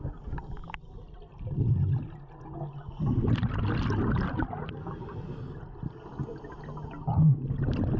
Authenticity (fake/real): real